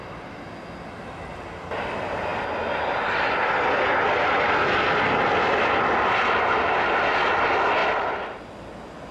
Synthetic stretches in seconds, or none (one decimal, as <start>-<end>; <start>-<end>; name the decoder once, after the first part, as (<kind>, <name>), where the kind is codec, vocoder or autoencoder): none